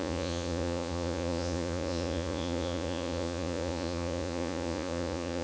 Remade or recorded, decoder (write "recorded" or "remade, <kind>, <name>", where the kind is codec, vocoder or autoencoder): remade, vocoder, Vocos